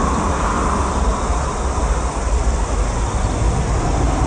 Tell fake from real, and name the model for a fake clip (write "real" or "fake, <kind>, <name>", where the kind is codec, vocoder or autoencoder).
real